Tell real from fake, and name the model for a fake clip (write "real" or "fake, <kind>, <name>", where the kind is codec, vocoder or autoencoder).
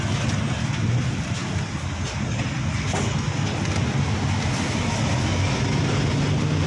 real